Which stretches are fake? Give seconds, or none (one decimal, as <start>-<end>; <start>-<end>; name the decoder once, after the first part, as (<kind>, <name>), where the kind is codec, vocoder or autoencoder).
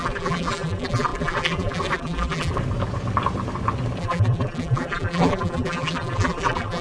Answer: 0.0-2.5 (vocoder, BigVGAN v2); 4.0-6.8